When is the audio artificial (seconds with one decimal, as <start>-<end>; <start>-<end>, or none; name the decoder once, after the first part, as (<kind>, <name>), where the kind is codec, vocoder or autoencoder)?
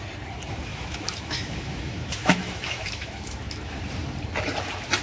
0.7-3.7 (autoencoder, DAC-VAE)